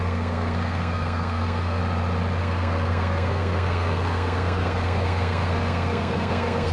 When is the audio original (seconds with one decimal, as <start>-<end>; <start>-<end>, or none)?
1.8-2.4